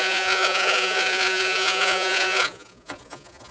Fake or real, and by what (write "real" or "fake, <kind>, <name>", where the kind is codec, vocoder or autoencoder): fake, vocoder, Vocos